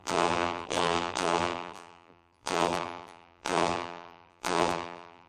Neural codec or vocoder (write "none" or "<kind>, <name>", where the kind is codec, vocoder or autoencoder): vocoder, BigVGAN v2